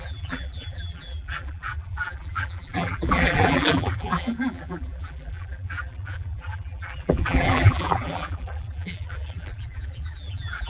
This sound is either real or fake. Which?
fake